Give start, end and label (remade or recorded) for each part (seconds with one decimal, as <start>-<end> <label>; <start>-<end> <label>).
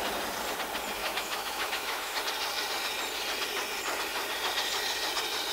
0.0-1.0 recorded; 1.0-2.2 remade; 2.2-5.5 recorded